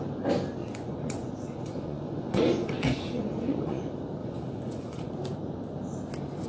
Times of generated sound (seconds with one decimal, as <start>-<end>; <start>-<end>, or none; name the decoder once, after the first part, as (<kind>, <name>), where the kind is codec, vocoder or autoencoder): 0.6-3.8 (vocoder, Vocos); 4.2-5.1